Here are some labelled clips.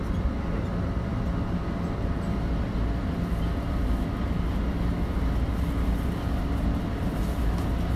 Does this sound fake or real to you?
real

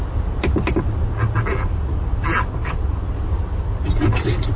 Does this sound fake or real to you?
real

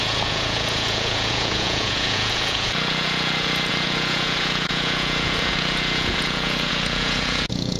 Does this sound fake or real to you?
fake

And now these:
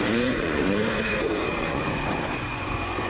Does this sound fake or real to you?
fake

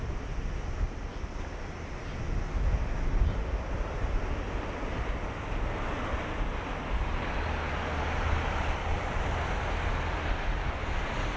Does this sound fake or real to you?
real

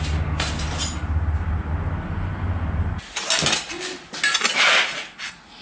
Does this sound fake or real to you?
real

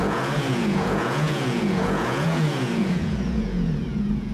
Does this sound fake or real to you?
fake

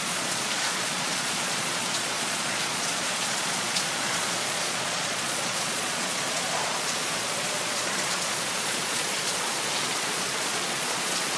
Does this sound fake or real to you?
fake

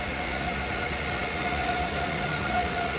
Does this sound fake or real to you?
fake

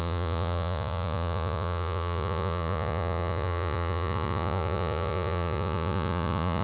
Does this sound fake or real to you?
fake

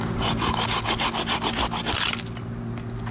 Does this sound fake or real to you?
real